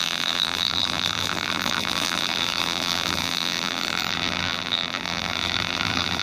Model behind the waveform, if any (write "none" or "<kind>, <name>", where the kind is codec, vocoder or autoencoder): vocoder, BigVGAN v2